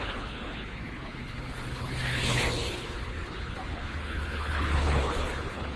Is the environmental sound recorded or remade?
remade